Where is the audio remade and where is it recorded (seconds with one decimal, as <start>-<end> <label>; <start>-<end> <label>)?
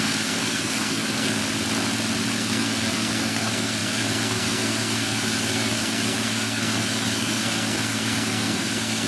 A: 0.0-1.4 remade; 1.4-2.3 recorded; 2.3-9.1 remade